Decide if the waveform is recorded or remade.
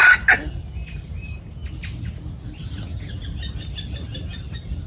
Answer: recorded